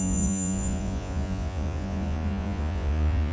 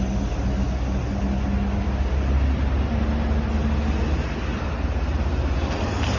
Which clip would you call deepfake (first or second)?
first